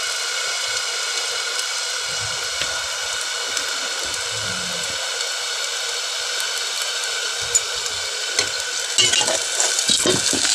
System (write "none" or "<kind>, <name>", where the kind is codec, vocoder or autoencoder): none